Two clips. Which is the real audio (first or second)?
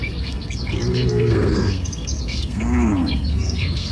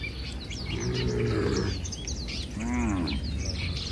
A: second